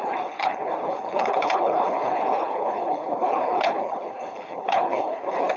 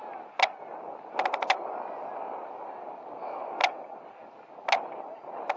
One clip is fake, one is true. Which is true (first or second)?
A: second